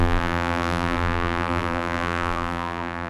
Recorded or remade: remade